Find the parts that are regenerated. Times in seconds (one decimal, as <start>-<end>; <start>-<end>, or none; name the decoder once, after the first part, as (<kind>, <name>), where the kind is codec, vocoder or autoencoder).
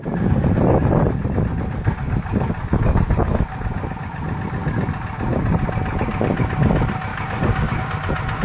7.1-7.8 (codec, DAC)